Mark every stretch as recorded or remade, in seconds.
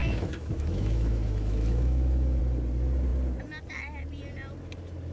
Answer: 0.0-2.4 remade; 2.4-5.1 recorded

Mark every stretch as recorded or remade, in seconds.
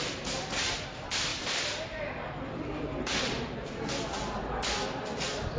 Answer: 0.0-1.3 recorded; 1.3-3.9 remade; 3.9-5.6 recorded